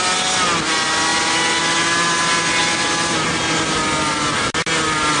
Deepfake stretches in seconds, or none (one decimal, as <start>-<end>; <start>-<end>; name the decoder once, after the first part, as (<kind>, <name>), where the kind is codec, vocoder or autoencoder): none